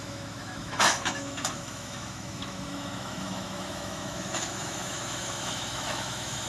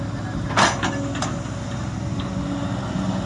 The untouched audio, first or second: second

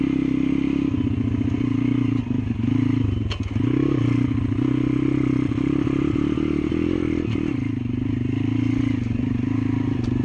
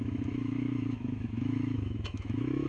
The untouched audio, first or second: first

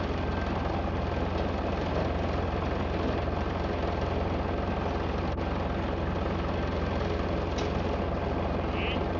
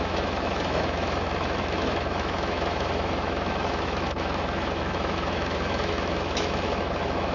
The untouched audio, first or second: first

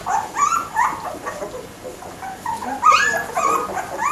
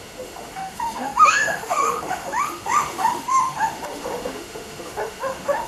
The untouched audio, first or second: first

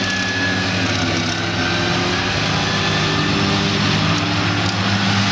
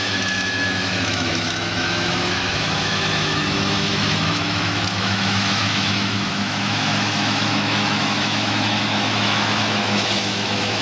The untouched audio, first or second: first